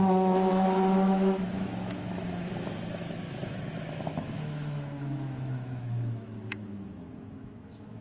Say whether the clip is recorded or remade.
remade